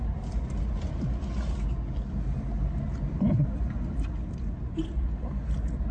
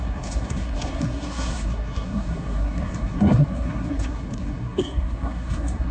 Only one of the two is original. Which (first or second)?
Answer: first